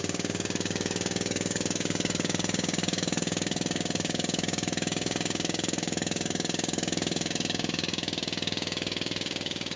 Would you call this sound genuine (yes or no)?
no